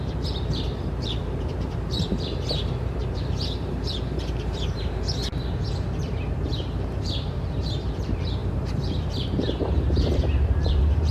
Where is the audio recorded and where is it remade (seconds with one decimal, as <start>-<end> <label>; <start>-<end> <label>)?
0.0-5.2 remade; 5.2-6.0 recorded; 6.0-11.1 remade